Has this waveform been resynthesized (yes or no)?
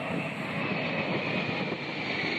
no